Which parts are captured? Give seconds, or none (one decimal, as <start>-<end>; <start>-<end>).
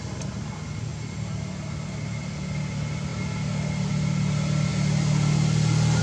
0.0-6.0